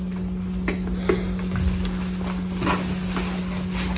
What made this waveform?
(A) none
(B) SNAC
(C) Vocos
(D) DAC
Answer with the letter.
A